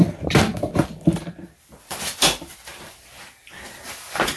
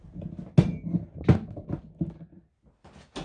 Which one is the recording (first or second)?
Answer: second